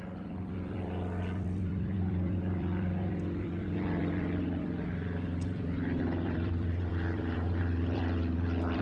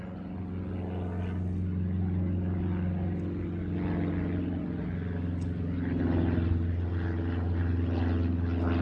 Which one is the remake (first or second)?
first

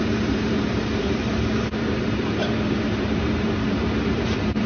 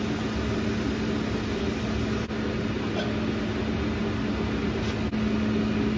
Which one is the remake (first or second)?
first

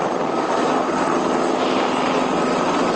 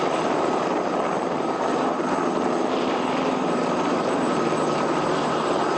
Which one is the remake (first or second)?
second